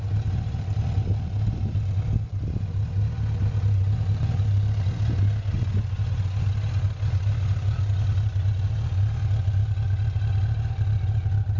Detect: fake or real real